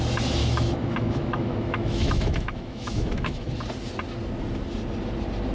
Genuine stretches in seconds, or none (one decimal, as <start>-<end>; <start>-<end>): 0.0-0.4; 3.5-5.5